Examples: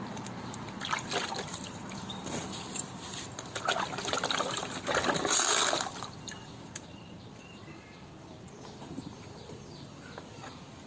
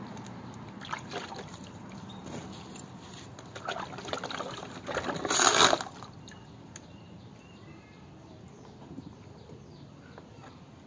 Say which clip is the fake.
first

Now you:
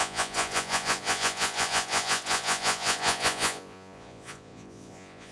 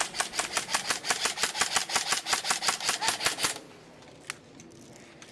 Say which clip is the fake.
first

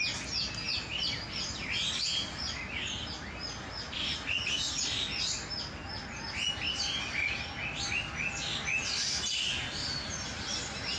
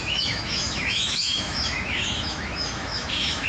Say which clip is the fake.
second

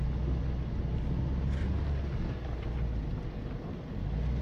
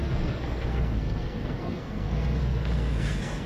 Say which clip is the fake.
second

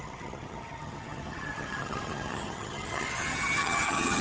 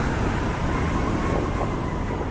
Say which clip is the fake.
first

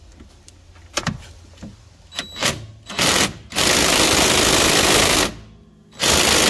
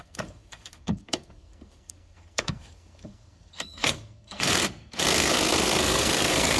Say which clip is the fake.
second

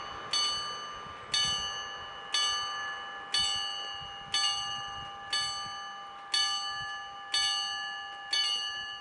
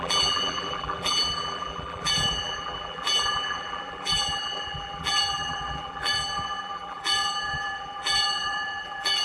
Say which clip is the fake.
second